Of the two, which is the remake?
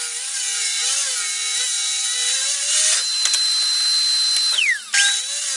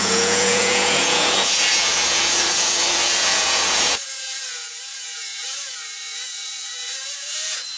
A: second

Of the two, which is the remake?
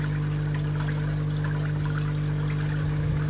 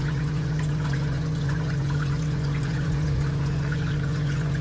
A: second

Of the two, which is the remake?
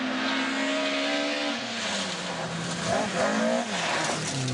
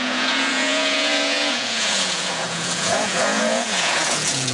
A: second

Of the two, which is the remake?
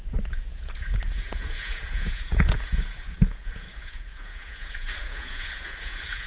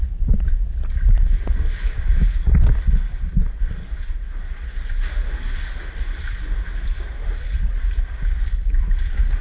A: first